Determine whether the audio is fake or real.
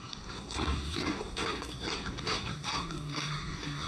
fake